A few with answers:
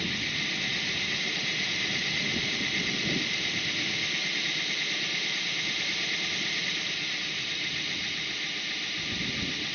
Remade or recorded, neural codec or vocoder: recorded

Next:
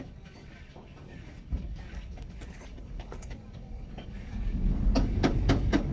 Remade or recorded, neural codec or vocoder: remade, codec, DAC